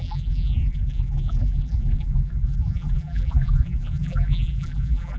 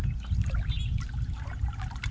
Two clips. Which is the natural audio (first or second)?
second